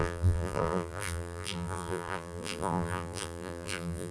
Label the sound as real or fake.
fake